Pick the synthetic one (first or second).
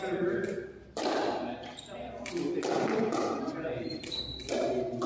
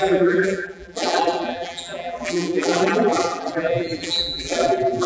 second